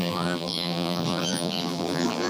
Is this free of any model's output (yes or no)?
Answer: no